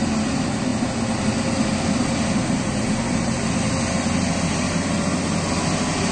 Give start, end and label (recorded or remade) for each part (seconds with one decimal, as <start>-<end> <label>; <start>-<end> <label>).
0.0-6.1 recorded